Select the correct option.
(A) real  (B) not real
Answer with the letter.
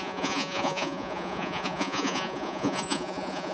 B